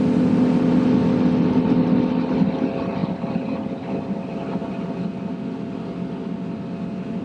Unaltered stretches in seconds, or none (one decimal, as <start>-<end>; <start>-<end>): 0.0-7.2